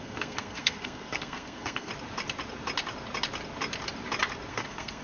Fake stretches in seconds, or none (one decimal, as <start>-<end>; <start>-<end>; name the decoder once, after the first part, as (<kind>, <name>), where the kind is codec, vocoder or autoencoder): 0.0-1.9 (codec, SNAC); 4.5-5.0